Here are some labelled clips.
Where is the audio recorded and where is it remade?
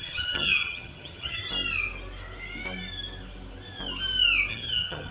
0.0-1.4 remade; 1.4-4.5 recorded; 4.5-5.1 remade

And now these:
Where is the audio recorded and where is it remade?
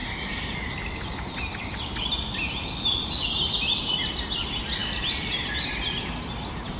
0.0-6.8 recorded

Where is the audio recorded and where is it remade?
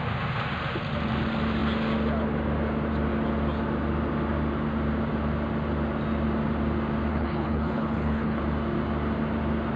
0.0-7.1 recorded; 7.1-8.4 remade; 8.4-9.8 recorded